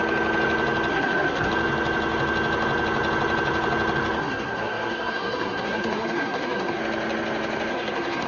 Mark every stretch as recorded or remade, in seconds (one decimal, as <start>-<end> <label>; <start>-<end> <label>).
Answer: 0.0-0.9 recorded; 0.9-1.5 remade; 1.5-4.2 recorded; 4.2-6.8 remade; 6.8-7.7 recorded; 7.7-8.3 remade